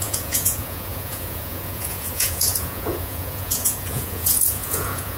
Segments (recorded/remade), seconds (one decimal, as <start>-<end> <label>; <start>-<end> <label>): 0.0-5.2 remade